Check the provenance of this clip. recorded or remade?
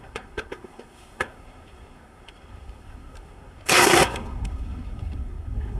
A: remade